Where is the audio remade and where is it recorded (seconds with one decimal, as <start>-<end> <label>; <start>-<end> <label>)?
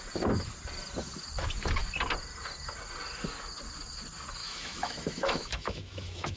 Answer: 0.0-4.4 recorded; 4.4-6.4 remade